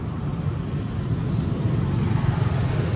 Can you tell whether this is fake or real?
real